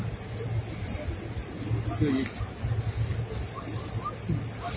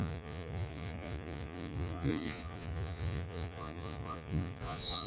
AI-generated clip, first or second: second